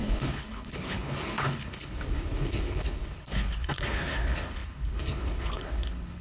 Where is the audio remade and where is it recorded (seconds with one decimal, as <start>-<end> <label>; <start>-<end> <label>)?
0.0-6.2 remade